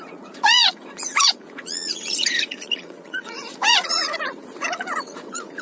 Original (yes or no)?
no